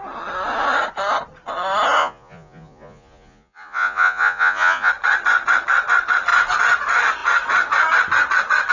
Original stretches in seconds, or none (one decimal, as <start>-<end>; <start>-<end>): 0.0-2.0; 4.9-8.7